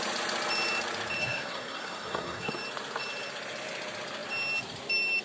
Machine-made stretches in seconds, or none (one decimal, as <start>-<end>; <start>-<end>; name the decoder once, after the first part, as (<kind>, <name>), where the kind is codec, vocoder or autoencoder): 1.2-2.5 (codec, SNAC)